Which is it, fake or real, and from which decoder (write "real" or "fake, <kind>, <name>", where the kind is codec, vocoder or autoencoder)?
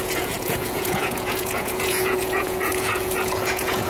fake, vocoder, Vocos